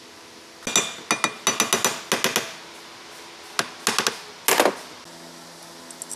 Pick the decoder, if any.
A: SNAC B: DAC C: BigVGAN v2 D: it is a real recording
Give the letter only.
D